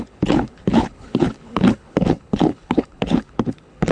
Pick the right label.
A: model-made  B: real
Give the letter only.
A